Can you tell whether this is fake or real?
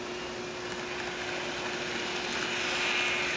real